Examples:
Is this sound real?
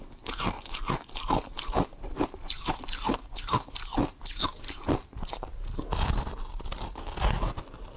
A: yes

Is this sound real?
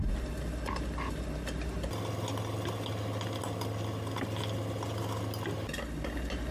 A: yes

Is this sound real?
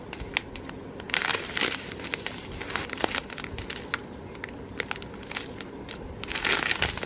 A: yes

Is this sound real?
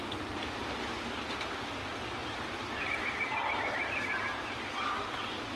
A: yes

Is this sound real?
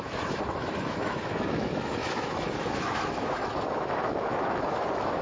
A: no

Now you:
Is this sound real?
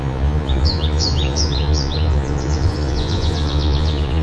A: no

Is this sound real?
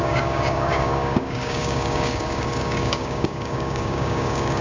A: no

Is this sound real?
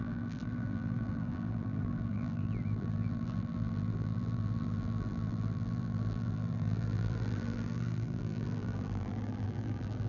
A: no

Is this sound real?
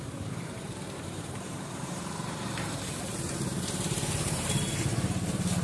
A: no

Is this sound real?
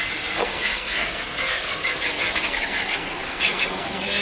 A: no